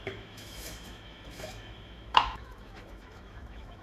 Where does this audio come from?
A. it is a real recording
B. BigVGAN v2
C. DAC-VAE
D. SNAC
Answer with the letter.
C